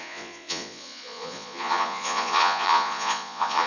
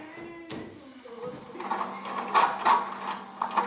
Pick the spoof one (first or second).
first